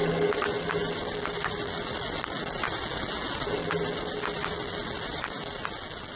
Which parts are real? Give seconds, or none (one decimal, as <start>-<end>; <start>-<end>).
0.0-6.2